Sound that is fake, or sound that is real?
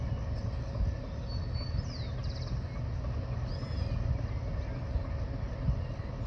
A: real